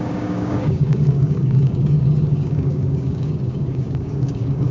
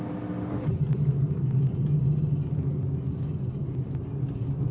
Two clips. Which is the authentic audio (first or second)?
second